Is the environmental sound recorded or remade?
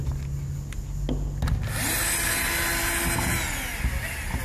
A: recorded